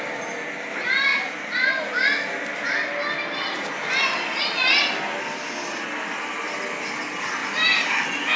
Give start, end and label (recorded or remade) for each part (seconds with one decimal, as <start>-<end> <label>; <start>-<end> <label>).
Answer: 0.0-8.4 recorded

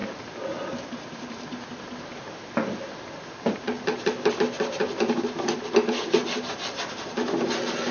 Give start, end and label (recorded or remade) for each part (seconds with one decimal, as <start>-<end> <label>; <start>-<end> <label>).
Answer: 0.0-7.9 recorded

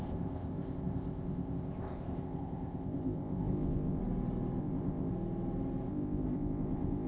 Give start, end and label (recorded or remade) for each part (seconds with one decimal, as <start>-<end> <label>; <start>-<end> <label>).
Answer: 0.0-4.0 remade; 4.0-4.6 recorded; 4.6-5.1 remade; 5.1-5.9 recorded; 5.9-7.1 remade

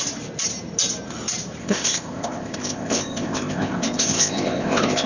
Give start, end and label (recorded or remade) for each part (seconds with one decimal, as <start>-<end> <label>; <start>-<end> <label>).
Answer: 0.0-1.6 recorded; 1.6-5.1 remade

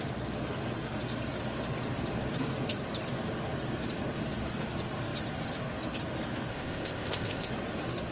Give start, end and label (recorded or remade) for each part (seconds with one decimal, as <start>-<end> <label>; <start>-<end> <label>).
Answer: 0.0-6.5 recorded; 6.5-7.5 remade; 7.5-8.1 recorded